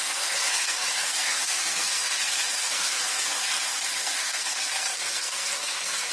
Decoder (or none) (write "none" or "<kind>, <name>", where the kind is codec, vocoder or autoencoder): codec, SNAC